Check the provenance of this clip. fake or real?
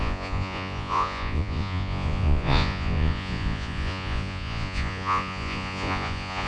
fake